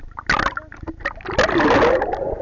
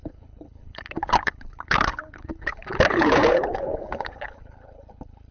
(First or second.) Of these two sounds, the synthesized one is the second